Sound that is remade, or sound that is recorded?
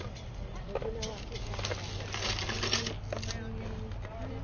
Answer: recorded